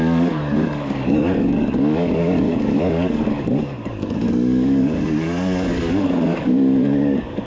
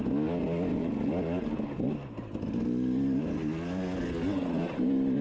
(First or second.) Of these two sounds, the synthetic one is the first